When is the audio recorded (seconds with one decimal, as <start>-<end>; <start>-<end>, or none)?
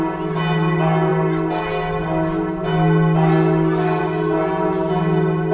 0.0-5.5